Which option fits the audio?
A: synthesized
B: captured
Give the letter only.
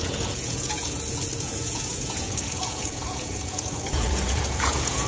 A